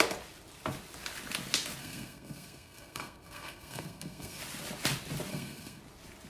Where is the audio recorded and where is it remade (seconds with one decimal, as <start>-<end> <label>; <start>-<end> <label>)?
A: 0.0-1.8 recorded; 1.8-4.4 remade; 4.4-5.3 recorded; 5.3-5.8 remade; 5.8-6.3 recorded

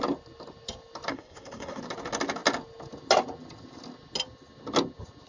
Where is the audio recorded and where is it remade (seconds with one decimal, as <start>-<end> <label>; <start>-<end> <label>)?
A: 0.0-1.1 recorded; 1.1-1.8 remade; 1.8-5.3 recorded